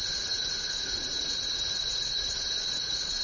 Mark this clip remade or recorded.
remade